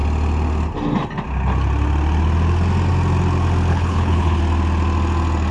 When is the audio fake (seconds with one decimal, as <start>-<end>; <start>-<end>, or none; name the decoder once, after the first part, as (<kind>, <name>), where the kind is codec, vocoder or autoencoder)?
3.7-4.4 (codec, HILCodec)